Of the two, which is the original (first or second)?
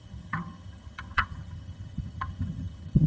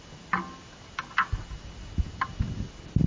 second